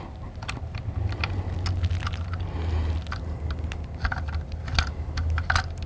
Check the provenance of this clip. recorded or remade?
recorded